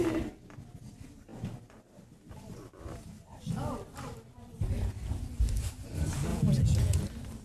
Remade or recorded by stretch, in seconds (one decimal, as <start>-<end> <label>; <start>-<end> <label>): 0.0-6.3 recorded; 6.3-7.0 remade; 7.0-7.4 recorded